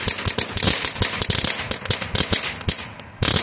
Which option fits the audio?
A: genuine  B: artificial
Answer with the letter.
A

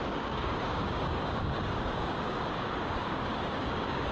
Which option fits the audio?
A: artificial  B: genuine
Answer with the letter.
A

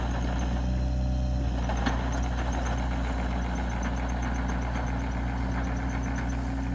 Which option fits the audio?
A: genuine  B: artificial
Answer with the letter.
A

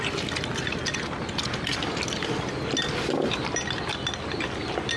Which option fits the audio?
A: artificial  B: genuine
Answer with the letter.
B